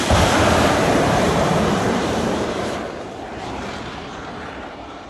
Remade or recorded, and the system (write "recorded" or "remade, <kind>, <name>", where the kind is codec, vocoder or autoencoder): remade, vocoder, BigVGAN v2